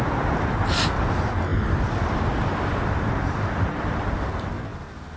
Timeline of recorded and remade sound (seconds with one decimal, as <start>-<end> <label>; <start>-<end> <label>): 0.0-1.5 recorded; 1.5-4.3 remade; 4.3-5.2 recorded